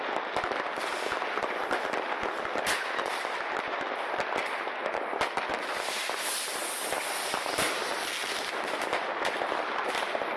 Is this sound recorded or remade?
recorded